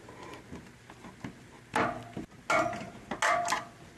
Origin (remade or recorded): recorded